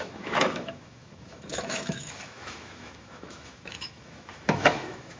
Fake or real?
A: fake